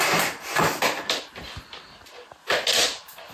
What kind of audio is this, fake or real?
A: real